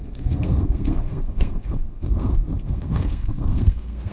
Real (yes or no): no